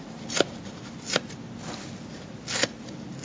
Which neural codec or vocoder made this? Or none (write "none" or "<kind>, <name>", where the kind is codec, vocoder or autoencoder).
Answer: none